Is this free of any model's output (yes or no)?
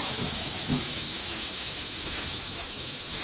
no